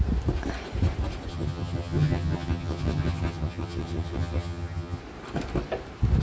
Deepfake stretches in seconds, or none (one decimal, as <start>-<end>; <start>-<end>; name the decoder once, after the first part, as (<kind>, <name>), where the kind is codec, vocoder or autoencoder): 1.3-5.0 (vocoder, HiFi-GAN)